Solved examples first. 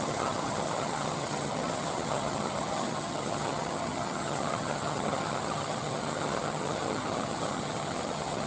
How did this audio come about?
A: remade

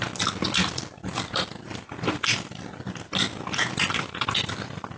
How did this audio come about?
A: recorded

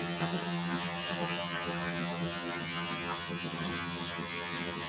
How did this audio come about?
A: remade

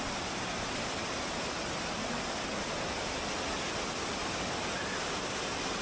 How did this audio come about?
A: recorded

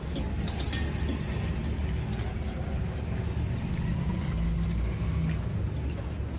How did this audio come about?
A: recorded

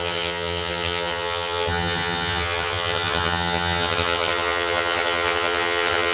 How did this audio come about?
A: remade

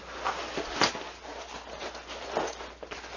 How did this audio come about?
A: recorded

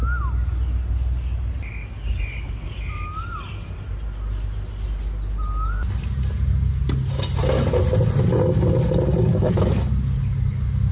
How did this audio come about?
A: recorded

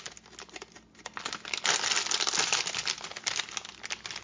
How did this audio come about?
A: recorded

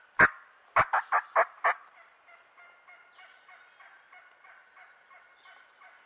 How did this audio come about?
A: recorded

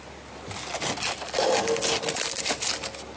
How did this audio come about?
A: recorded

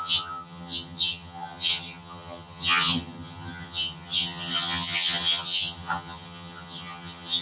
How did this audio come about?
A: remade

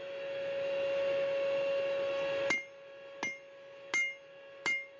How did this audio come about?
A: recorded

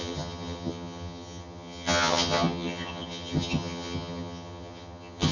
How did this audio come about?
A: remade